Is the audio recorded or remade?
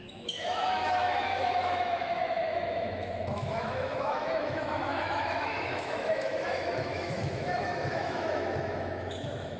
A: remade